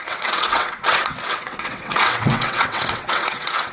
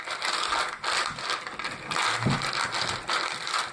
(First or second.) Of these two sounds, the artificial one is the first